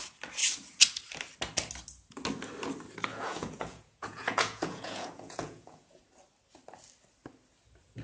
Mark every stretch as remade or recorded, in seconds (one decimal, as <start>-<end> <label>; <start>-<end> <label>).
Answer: 0.0-3.1 recorded; 3.1-6.0 remade; 6.0-8.0 recorded